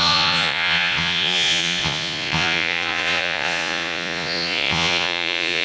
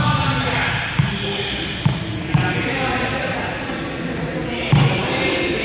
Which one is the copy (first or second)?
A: first